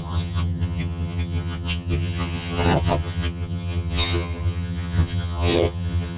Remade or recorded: remade